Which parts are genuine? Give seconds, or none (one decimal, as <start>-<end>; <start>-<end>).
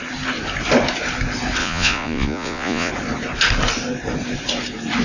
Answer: 0.0-1.6; 2.9-5.0